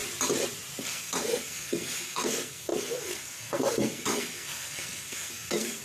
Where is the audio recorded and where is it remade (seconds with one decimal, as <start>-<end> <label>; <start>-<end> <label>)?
0.0-0.8 recorded; 0.8-5.8 remade